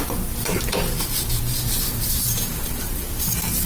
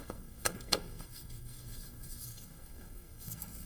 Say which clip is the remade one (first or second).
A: second